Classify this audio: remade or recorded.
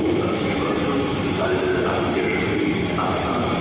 remade